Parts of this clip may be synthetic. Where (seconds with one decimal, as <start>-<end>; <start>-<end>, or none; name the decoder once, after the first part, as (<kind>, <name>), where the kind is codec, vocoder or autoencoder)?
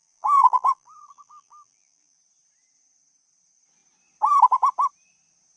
0.0-2.2 (vocoder, BigVGAN v2)